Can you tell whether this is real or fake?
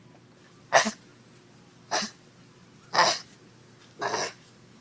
real